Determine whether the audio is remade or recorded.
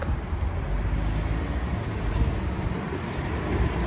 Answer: recorded